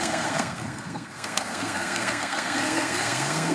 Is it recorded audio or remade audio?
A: remade